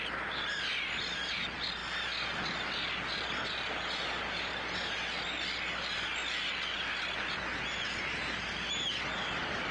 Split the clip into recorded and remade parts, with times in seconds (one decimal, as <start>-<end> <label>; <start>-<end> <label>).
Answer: 0.0-9.7 recorded